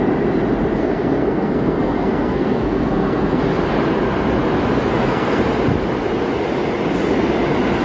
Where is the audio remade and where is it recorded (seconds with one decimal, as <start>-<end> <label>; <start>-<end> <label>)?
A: 0.0-0.8 recorded; 0.8-3.4 remade; 3.4-4.9 recorded; 4.9-5.4 remade; 5.4-7.8 recorded